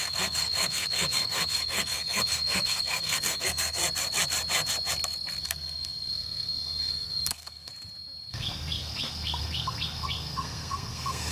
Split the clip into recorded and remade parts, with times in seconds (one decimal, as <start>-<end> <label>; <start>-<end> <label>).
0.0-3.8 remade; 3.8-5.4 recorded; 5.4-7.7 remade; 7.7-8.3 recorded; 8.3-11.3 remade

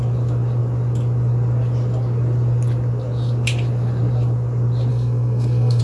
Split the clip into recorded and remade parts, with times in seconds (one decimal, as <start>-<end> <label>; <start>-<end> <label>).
0.0-4.9 recorded; 4.9-5.8 remade

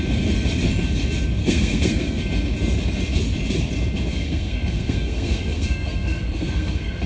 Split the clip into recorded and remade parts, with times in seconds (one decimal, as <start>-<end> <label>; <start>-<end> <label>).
0.0-1.4 recorded; 1.4-2.2 remade; 2.2-4.1 recorded; 4.1-7.1 remade